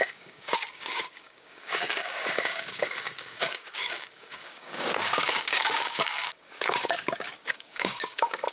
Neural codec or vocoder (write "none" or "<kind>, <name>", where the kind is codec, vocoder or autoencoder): codec, DAC